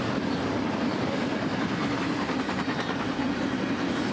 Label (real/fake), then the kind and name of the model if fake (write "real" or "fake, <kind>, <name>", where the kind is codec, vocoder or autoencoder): real